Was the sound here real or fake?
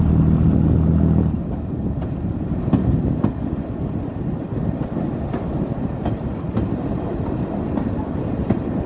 real